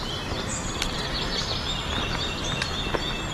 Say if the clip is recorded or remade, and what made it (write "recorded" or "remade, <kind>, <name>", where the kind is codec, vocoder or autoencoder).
recorded